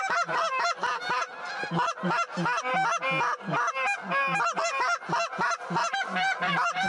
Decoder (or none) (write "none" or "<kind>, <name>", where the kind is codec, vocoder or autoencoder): none